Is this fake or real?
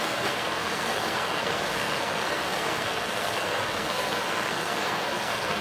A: fake